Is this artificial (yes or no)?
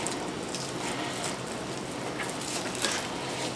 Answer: no